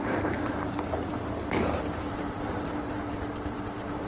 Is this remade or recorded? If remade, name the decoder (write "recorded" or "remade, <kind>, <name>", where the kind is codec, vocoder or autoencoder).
remade, vocoder, BigVGAN v2